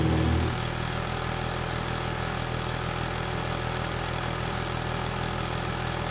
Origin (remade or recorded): recorded